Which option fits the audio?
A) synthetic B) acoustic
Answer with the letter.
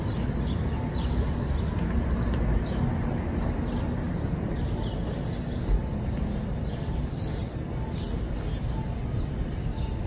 B